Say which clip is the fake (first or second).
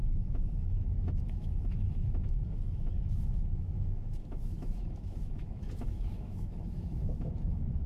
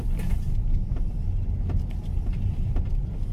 first